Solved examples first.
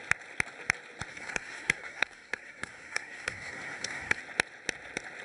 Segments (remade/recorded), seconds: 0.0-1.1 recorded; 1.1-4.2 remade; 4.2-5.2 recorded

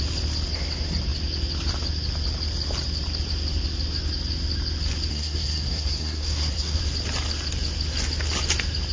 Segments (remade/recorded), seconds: 0.0-5.1 recorded; 5.1-6.8 remade; 6.8-8.9 recorded

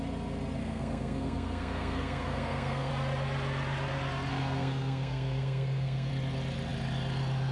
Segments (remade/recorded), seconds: 0.0-0.6 recorded; 0.6-2.9 remade; 2.9-4.3 recorded; 4.3-6.1 remade; 6.1-7.5 recorded

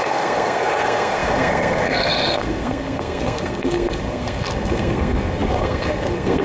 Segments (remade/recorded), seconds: 0.0-6.4 remade

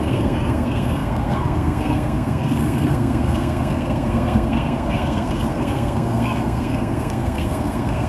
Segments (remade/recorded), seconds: 0.0-8.1 remade

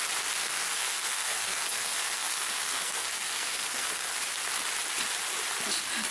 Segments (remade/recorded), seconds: 0.0-0.4 recorded; 0.4-4.1 remade; 4.1-6.1 recorded

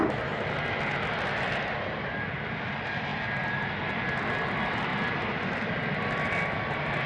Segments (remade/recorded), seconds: 0.0-7.1 recorded

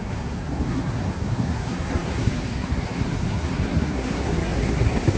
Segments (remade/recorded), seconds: 0.0-5.2 remade